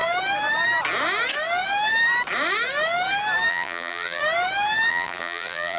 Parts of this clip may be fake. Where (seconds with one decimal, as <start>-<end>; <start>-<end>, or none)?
3.5-4.2; 4.9-5.8